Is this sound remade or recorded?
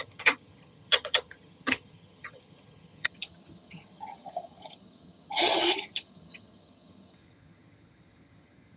remade